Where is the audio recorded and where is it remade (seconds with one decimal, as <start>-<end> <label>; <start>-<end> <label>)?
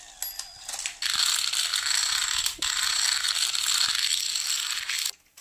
0.0-5.4 recorded